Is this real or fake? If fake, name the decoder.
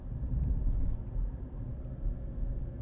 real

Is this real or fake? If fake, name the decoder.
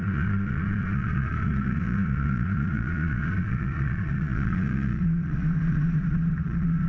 fake, vocoder, Vocos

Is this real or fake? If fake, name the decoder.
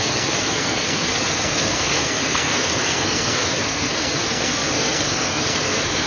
fake, codec, SNAC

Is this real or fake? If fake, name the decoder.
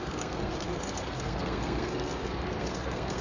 fake, codec, SNAC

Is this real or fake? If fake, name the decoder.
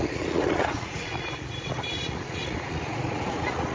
fake, vocoder, Vocos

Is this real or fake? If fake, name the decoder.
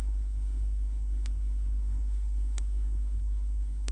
fake, codec, SNAC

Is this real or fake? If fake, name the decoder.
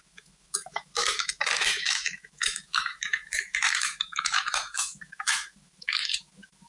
fake, autoencoder, DAC-VAE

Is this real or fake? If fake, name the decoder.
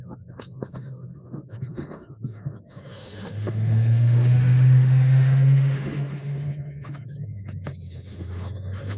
fake, autoencoder, DAC-VAE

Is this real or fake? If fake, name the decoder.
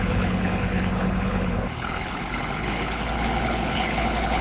fake, codec, HILCodec